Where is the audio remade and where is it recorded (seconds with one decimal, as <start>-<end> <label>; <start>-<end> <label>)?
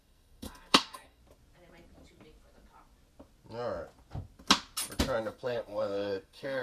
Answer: 0.0-1.2 remade; 1.2-5.2 recorded; 5.2-6.6 remade